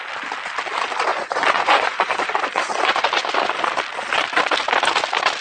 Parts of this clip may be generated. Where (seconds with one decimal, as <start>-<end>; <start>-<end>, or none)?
1.1-3.0